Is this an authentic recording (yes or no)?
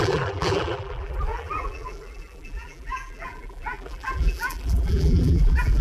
no